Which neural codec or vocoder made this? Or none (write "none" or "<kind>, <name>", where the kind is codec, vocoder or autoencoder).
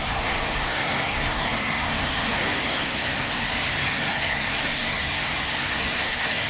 codec, SNAC